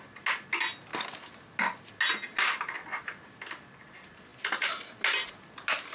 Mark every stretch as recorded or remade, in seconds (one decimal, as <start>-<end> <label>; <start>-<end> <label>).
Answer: 0.0-5.9 recorded

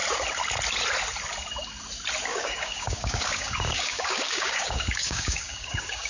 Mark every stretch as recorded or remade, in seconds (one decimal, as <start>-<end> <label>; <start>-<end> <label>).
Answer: 0.0-2.3 recorded; 2.3-6.1 remade

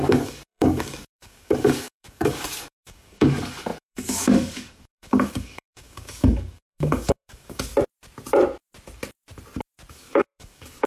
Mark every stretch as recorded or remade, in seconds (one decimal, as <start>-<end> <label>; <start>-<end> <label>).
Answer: 0.0-7.7 remade; 7.7-9.9 recorded; 9.9-10.9 remade